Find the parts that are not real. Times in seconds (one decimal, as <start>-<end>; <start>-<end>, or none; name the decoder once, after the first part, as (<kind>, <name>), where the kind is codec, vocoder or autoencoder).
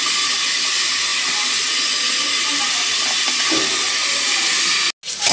none